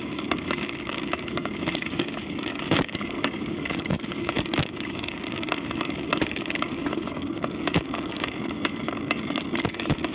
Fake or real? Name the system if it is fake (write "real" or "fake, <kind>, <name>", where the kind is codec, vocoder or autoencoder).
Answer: fake, codec, DAC